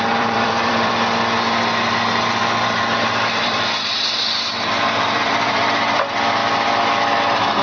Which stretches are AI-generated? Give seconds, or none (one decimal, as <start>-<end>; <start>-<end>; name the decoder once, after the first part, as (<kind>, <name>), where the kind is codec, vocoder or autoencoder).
0.0-0.9 (vocoder, BigVGAN v2); 3.3-6.4